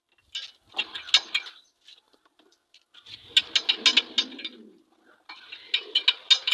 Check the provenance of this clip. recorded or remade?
recorded